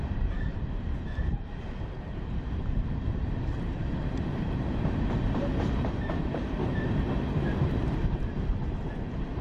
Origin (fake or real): fake